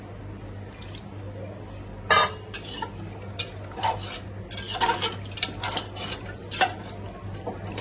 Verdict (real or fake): real